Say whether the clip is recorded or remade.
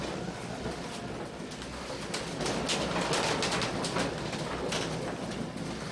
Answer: recorded